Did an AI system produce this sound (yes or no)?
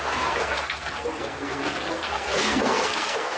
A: yes